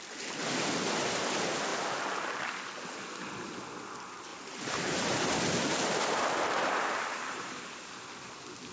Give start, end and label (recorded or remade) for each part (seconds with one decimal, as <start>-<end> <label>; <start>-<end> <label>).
0.0-4.3 recorded; 4.3-7.5 remade; 7.5-8.7 recorded